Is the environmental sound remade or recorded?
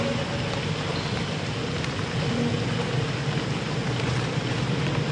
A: recorded